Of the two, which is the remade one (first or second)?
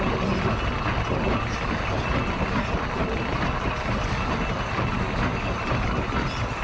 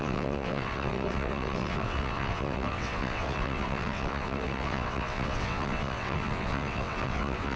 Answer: second